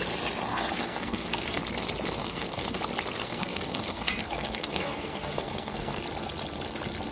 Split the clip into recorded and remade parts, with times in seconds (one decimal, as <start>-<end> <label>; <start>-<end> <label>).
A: 0.0-0.5 recorded; 0.5-1.6 remade; 1.6-2.2 recorded; 2.2-2.8 remade; 2.8-3.2 recorded; 3.2-6.0 remade; 6.0-7.1 recorded